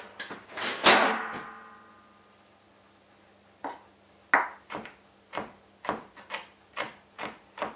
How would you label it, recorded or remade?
recorded